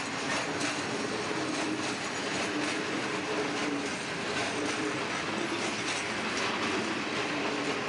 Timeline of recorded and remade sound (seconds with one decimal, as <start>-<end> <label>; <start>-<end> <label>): 0.0-7.9 recorded